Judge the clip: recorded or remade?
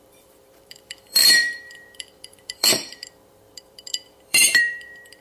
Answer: remade